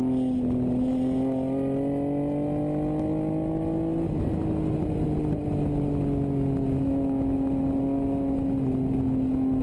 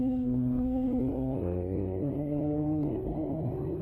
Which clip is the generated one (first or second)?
second